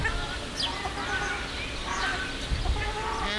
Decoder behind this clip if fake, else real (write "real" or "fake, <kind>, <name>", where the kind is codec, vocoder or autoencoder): real